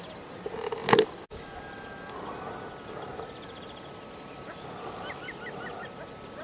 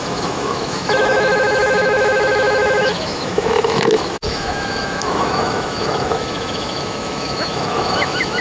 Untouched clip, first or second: first